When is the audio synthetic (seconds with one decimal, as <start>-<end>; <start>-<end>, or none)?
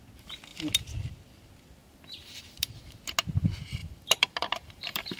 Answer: 1.8-3.0; 3.8-5.2